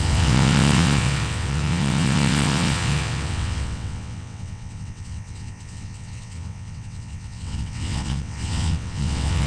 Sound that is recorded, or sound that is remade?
remade